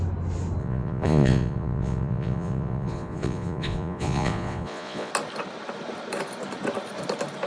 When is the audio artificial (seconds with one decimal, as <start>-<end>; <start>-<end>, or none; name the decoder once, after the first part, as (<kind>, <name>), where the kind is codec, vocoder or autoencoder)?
0.6-5.1 (vocoder, Vocos)